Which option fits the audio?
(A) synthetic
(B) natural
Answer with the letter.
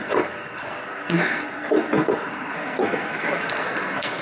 A